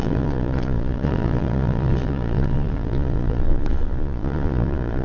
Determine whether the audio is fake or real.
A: fake